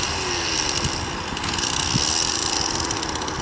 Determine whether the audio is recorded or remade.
recorded